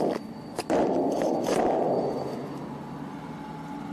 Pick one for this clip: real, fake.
real